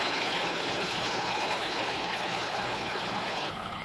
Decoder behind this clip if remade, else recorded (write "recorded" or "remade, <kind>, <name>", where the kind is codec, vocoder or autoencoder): remade, codec, HILCodec